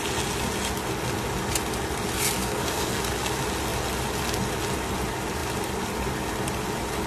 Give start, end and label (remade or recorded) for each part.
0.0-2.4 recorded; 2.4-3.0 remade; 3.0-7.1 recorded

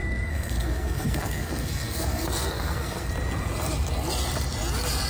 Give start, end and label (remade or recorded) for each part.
0.0-3.1 remade; 3.1-5.1 recorded

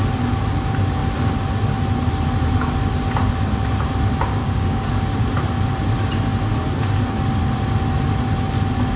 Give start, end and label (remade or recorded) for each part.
0.0-4.4 recorded; 4.4-4.9 remade; 4.9-9.0 recorded

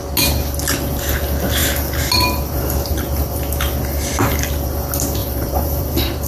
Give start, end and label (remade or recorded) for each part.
0.0-5.2 recorded; 5.2-6.3 remade

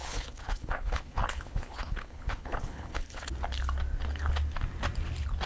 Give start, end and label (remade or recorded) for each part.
0.0-3.3 remade; 3.3-5.5 recorded

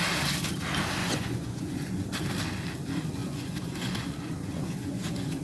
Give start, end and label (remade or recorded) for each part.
0.0-1.0 recorded; 1.0-2.1 remade; 2.1-3.2 recorded; 3.2-5.4 remade